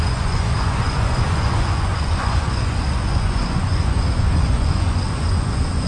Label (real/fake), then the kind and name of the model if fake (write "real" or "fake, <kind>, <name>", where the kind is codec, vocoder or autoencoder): fake, vocoder, Vocos